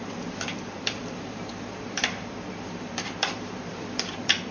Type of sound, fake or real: fake